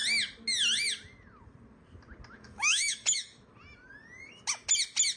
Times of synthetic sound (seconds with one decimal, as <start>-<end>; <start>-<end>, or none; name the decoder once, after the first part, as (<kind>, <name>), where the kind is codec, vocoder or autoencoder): 2.3-3.5 (autoencoder, DAC-VAE)